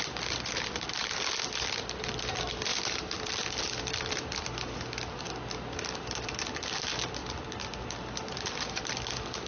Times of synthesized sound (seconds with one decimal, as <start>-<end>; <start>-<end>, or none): 2.7-4.4; 7.2-8.8